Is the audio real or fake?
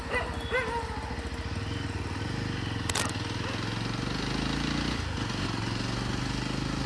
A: real